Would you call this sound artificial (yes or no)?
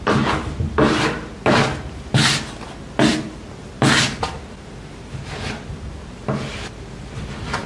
no